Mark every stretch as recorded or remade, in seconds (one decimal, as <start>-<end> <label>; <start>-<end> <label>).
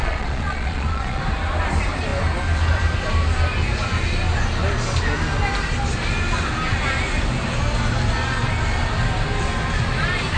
0.0-1.2 remade; 1.2-10.4 recorded